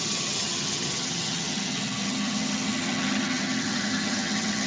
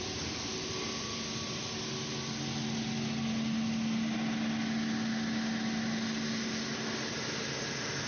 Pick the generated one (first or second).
first